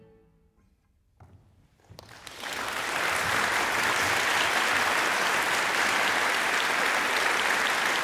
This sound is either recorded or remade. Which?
recorded